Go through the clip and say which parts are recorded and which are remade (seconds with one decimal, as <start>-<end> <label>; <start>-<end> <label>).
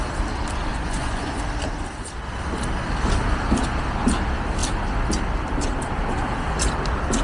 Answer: 0.0-0.7 recorded; 0.7-1.4 remade; 1.4-7.2 recorded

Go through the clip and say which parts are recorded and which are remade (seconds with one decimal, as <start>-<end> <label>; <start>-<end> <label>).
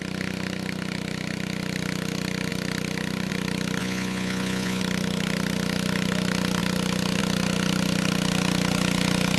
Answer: 0.0-3.8 recorded; 3.8-4.8 remade; 4.8-9.4 recorded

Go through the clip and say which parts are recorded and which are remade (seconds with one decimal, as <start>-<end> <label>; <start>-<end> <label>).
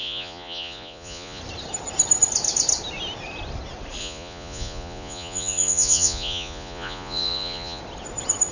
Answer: 0.0-1.4 remade; 1.4-4.0 recorded; 4.0-7.8 remade; 7.8-8.5 recorded